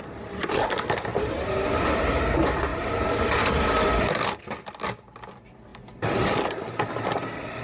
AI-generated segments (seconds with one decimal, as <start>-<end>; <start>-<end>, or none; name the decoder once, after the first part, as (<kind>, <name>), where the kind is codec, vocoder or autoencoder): 1.1-1.6 (vocoder, BigVGAN v2); 2.7-4.4